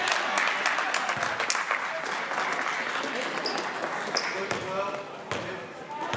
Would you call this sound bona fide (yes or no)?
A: yes